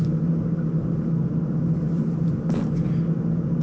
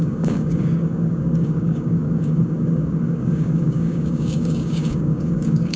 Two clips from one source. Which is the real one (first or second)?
first